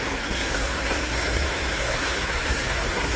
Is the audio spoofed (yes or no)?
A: yes